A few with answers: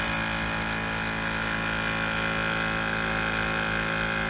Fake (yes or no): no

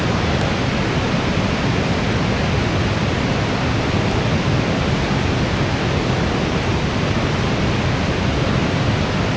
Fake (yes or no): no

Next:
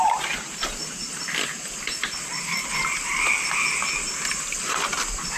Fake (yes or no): no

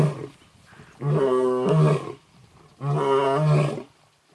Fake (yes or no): no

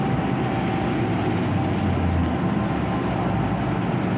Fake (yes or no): no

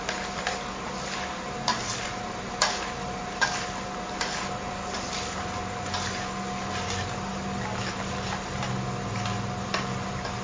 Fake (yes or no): no